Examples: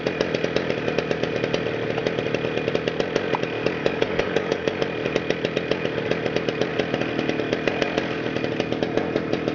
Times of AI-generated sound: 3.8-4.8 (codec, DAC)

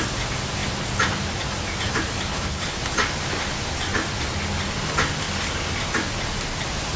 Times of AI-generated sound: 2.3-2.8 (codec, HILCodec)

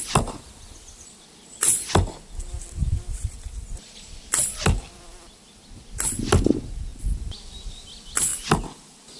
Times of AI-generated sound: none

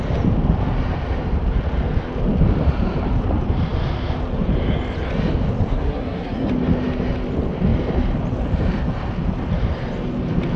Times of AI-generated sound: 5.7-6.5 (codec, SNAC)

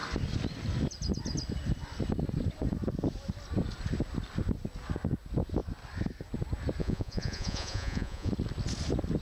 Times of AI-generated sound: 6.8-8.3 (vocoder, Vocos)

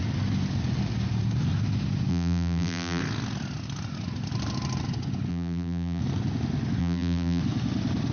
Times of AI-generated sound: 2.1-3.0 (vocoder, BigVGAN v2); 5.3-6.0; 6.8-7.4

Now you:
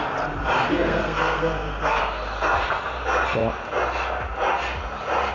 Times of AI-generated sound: 0.7-2.0 (codec, SNAC)